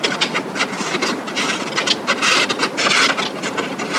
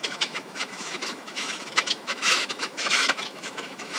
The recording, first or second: first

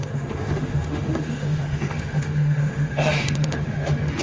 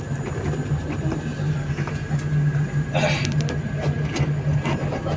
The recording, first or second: second